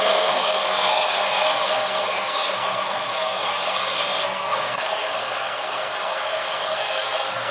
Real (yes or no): no